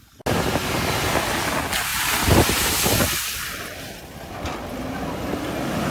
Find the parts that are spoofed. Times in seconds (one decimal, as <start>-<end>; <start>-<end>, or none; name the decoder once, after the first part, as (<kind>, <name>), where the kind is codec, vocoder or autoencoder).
1.9-2.8 (vocoder, BigVGAN v2)